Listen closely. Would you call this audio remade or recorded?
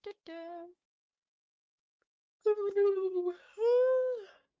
remade